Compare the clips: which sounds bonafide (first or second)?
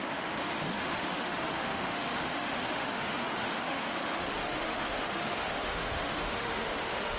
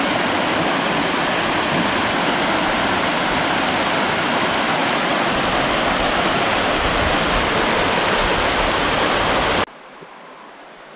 second